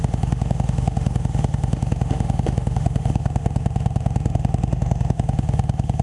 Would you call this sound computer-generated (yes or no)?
yes